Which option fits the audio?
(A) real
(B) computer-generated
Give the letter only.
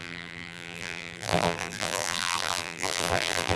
B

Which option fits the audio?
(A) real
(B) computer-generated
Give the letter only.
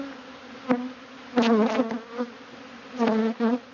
A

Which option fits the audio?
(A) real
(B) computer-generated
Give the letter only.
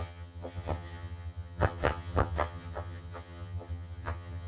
B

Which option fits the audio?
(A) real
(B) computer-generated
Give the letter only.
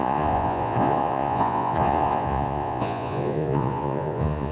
B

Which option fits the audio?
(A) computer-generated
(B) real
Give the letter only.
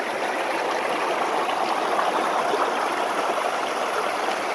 B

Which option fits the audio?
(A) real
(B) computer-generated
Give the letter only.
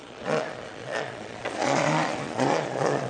B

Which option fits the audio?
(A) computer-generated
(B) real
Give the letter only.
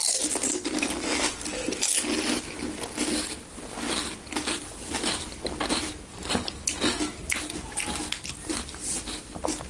B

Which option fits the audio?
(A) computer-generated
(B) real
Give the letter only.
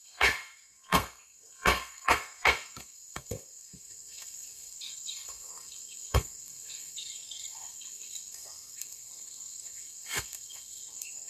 A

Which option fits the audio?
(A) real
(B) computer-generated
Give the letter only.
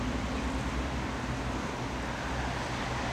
A